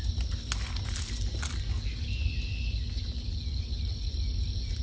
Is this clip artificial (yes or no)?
no